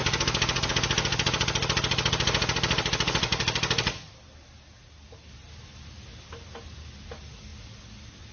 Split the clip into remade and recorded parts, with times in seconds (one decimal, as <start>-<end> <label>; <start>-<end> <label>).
0.0-8.3 recorded